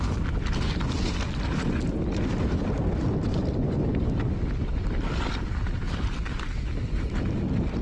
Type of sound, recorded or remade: recorded